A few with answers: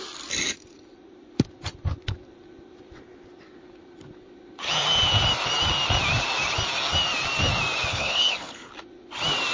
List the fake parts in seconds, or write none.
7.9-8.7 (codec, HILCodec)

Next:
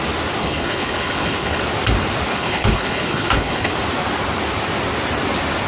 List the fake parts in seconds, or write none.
0.4-1.6 (codec, HILCodec); 2.3-3.7

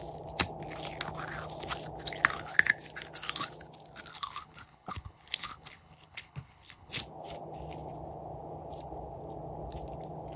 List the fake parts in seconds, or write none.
4.1-6.9 (codec, HILCodec)

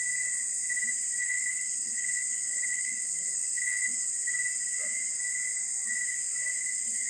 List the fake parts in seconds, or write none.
1.2-4.1 (codec, HILCodec)

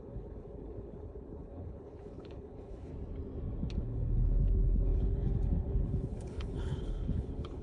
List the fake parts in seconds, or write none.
0.0-2.9 (codec, HILCodec); 3.8-7.6